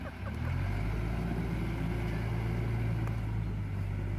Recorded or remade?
recorded